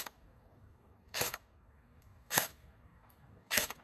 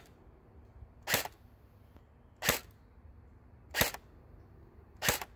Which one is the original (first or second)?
second